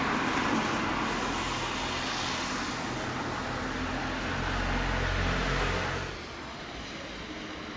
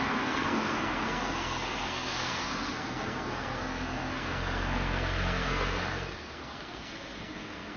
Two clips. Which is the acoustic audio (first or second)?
first